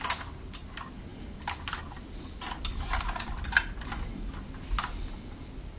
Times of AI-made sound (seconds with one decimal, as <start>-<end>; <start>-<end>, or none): none